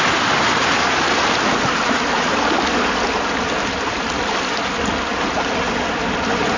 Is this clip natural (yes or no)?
yes